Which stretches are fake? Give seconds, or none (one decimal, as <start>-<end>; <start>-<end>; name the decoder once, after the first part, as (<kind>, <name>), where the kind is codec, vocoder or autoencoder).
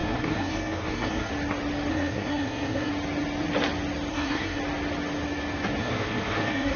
0.0-1.3 (codec, SNAC); 1.9-2.9; 4.1-4.6; 5.8-6.8